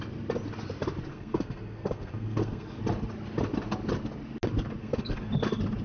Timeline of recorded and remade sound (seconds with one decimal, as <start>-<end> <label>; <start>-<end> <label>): 0.0-1.1 recorded; 1.1-2.8 remade; 2.8-4.8 recorded; 4.8-5.3 remade; 5.3-5.8 recorded

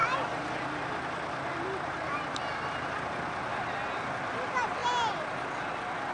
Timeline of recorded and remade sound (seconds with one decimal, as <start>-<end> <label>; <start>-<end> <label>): 0.0-6.1 recorded

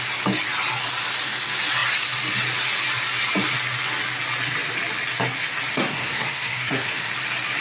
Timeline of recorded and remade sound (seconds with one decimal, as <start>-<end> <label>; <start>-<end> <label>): 0.0-5.7 recorded; 5.7-7.1 remade; 7.1-7.6 recorded